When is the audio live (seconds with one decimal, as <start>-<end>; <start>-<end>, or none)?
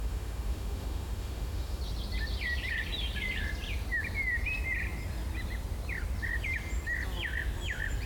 1.8-8.1